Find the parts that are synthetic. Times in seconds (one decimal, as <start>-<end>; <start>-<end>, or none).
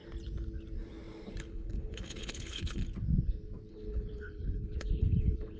1.5-2.8; 3.7-5.6